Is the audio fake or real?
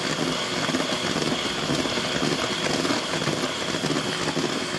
real